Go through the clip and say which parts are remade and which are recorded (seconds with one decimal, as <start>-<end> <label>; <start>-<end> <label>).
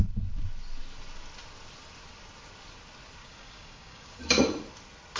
0.0-3.2 recorded; 3.2-4.2 remade; 4.2-5.2 recorded